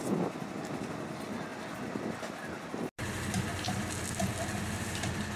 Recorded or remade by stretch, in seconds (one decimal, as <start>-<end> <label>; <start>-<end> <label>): 0.0-5.4 recorded